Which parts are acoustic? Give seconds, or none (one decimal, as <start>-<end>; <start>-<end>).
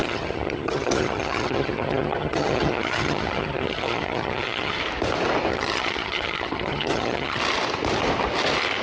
4.8-5.5; 7.4-8.8